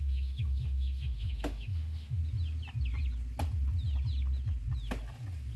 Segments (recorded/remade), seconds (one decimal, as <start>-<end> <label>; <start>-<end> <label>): 0.0-2.2 remade; 2.2-5.6 recorded